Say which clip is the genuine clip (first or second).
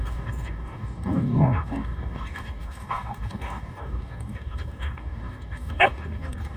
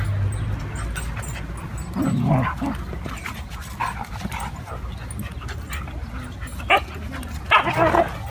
second